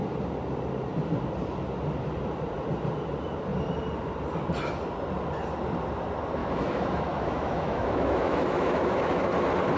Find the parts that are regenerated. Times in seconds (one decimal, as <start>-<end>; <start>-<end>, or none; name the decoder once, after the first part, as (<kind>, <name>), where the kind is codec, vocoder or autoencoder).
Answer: 6.4-9.3 (autoencoder, DAC-VAE)

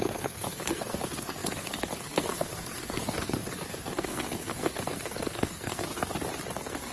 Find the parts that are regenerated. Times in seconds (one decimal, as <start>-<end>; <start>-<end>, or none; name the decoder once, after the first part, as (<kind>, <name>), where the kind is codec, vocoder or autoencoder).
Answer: 0.0-5.9 (codec, SNAC); 6.5-6.9